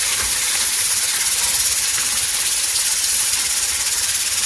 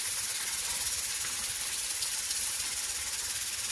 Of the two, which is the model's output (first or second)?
second